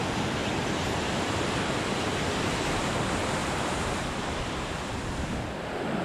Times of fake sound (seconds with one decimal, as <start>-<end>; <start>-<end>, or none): 0.4-1.7; 3.4-4.7